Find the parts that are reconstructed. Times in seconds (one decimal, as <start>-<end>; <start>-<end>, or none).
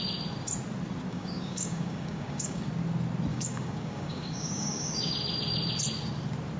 1.1-2.6; 3.3-5.1